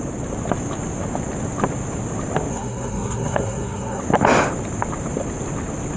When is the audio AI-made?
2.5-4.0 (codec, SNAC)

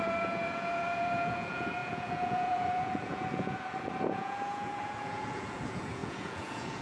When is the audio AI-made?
0.0-6.8 (vocoder, Vocos)

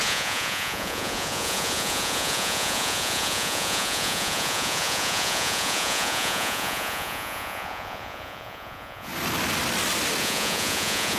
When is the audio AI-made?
0.0-9.1 (vocoder, Vocos); 10.2-11.2

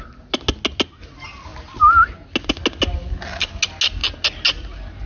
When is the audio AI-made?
none

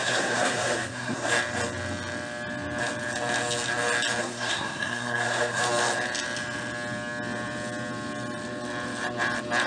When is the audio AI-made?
0.0-1.3 (codec, SNAC); 4.2-5.6

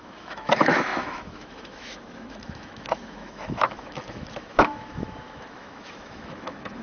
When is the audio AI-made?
0.0-6.8 (autoencoder, DAC-VAE)